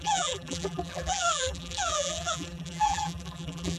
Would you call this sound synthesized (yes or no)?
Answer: yes